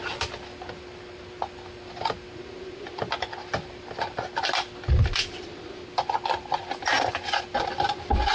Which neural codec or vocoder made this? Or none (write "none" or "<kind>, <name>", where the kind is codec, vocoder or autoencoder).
none